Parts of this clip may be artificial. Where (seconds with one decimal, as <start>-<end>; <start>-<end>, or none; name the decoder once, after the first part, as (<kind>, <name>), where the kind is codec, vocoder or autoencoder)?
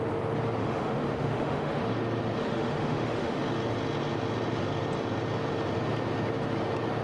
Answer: 0.6-1.8 (autoencoder, DAC-VAE); 2.4-3.4